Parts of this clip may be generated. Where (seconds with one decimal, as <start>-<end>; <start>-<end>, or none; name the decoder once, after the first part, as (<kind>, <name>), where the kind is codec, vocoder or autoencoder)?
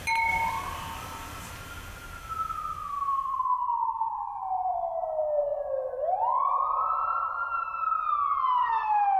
none